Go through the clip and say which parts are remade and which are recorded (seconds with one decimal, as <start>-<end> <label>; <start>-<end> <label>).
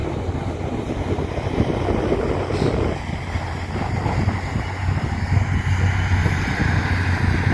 0.0-7.5 recorded